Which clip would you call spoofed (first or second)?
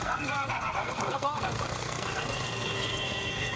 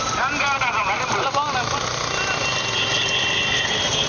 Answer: first